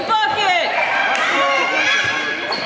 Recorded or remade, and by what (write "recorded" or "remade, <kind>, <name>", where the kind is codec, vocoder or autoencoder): recorded